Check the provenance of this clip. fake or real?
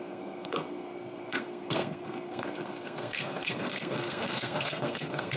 fake